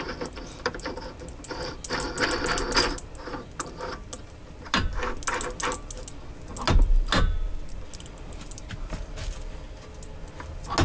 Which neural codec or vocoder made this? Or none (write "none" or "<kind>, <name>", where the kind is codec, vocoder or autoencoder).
none